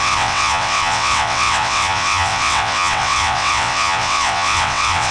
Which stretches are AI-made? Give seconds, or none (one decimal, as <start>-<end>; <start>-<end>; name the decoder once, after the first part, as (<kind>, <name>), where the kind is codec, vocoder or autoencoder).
0.0-5.1 (vocoder, WaveNeXt)